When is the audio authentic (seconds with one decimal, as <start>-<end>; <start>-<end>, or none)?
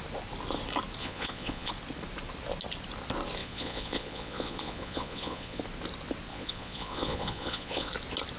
0.0-1.0; 1.7-3.4; 5.6-6.3; 7.9-8.4